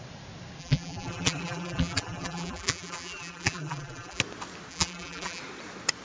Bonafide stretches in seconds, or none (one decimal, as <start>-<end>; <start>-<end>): 0.0-0.6; 4.2-4.7; 5.4-6.0